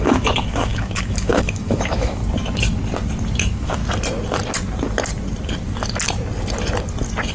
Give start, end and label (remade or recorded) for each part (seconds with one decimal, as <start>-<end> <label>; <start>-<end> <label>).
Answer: 0.0-2.2 remade; 2.2-3.4 recorded; 3.4-3.8 remade; 3.8-7.3 recorded